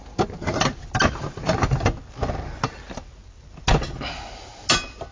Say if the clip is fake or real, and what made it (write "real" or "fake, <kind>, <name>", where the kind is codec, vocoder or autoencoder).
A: real